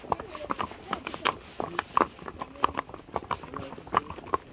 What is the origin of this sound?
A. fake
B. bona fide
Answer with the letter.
B